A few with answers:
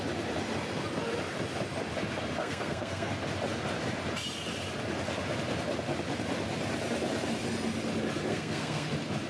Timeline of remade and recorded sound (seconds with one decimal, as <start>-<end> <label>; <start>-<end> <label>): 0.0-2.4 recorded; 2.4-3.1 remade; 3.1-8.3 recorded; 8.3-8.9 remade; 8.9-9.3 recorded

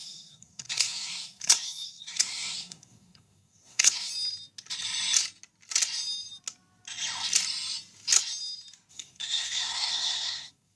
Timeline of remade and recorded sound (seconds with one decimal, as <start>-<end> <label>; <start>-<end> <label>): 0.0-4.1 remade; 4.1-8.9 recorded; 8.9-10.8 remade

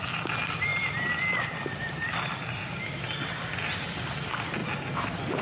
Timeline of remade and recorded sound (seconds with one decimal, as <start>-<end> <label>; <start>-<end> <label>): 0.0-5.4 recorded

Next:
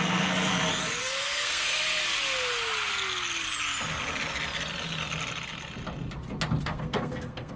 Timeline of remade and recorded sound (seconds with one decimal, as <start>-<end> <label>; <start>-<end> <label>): 0.0-0.5 remade; 0.5-1.0 recorded; 1.0-2.0 remade; 2.0-6.6 recorded; 6.6-7.6 remade

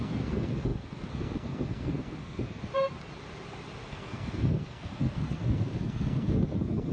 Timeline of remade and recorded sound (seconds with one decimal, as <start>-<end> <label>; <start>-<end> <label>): 0.0-2.6 remade; 2.6-3.9 recorded; 3.9-6.9 remade

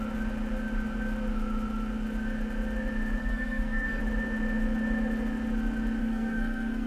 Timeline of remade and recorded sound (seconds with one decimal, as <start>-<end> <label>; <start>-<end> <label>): 0.0-3.2 recorded; 3.2-4.0 remade; 4.0-6.0 recorded; 6.0-6.9 remade

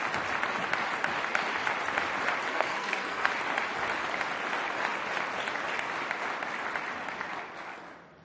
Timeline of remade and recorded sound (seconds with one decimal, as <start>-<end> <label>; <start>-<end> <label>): 0.0-2.5 recorded; 2.5-3.3 remade; 3.3-8.2 recorded

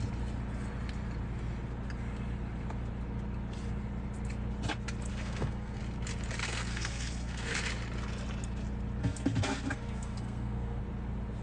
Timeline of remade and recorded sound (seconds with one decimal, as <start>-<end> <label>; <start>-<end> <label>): 0.0-5.1 recorded; 5.1-5.8 remade; 5.8-6.4 recorded; 6.4-7.6 remade; 7.6-9.0 recorded; 9.0-10.8 remade; 10.8-11.4 recorded